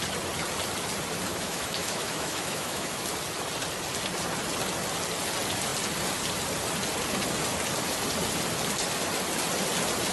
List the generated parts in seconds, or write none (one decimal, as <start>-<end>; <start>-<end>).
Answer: 1.3-3.1